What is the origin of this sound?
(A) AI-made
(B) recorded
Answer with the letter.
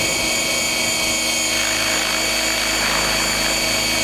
B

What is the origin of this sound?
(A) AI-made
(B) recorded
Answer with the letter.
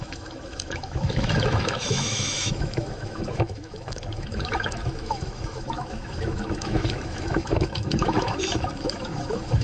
A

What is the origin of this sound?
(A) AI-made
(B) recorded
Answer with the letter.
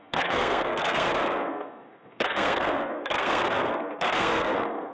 A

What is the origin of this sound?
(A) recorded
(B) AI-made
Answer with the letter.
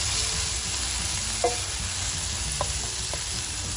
A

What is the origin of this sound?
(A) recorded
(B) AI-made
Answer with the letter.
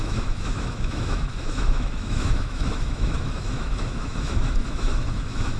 B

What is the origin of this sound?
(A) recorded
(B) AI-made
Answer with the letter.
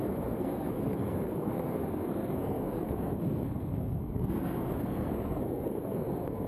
B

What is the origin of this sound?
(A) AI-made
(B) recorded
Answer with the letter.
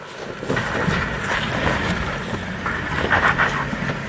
B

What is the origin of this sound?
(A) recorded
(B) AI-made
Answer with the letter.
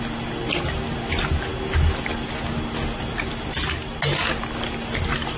A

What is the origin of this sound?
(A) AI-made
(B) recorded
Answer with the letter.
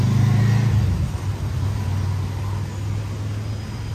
B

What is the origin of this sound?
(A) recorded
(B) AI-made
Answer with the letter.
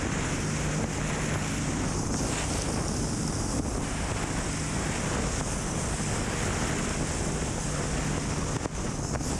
A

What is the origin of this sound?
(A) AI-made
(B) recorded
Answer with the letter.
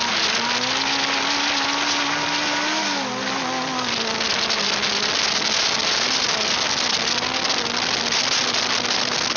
B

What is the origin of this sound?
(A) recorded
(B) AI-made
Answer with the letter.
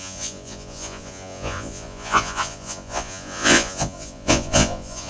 B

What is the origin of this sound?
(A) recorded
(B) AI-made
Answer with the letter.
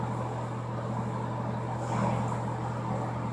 A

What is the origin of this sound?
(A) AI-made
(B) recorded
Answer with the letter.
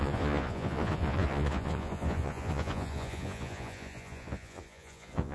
A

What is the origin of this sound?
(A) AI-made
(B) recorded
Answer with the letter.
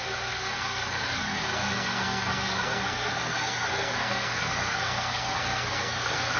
A